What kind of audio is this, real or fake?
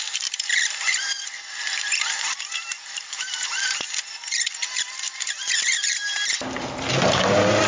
fake